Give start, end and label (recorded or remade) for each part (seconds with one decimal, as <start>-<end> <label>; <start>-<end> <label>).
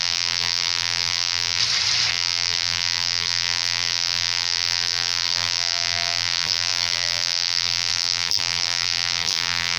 0.0-1.6 remade; 1.6-2.1 recorded; 2.1-9.8 remade